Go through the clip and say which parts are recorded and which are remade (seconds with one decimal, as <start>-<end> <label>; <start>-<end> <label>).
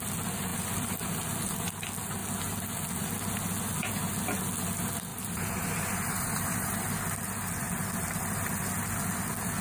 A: 0.0-5.1 recorded; 5.1-6.8 remade; 6.8-9.6 recorded